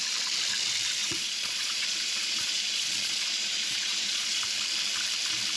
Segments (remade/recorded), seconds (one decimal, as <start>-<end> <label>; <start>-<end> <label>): 0.0-1.0 recorded; 1.0-4.4 remade; 4.4-5.6 recorded